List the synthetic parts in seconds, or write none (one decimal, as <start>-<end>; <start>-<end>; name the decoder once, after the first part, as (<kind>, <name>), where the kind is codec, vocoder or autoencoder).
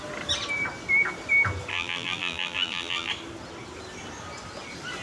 1.7-3.1 (vocoder, BigVGAN v2)